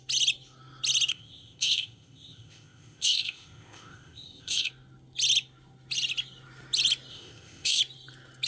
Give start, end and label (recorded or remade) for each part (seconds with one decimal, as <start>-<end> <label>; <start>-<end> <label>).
0.0-1.1 recorded; 1.1-4.7 remade; 4.7-7.1 recorded; 7.1-7.8 remade; 7.8-8.5 recorded